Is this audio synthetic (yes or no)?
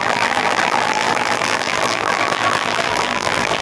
yes